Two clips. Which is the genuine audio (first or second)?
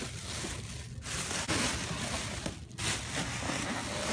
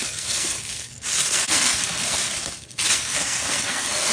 first